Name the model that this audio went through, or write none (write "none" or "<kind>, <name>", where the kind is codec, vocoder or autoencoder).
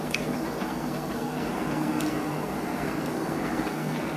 codec, SNAC